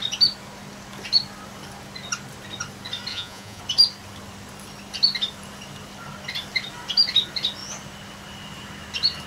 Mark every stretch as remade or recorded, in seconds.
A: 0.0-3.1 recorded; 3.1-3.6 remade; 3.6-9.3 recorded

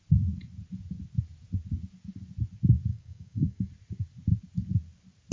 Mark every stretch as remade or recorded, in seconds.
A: 0.0-2.9 recorded; 2.9-3.7 remade; 3.7-5.3 recorded

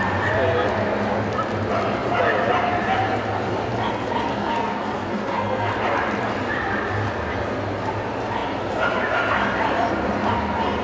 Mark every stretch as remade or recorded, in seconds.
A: 0.0-4.3 recorded; 4.3-5.7 remade; 5.7-10.8 recorded

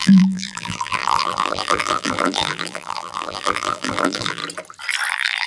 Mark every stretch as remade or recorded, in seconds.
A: 0.0-4.4 remade; 4.4-5.1 recorded; 5.1-5.5 remade